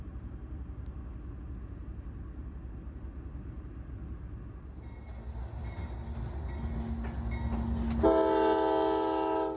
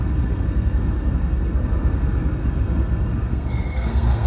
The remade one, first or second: second